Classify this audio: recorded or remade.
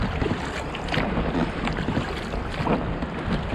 recorded